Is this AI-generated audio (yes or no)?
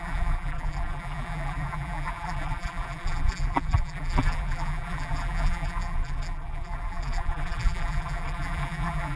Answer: yes